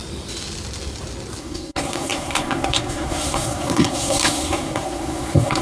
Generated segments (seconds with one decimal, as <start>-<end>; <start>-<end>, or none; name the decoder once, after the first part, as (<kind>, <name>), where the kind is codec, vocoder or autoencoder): 1.4-5.6 (codec, SNAC)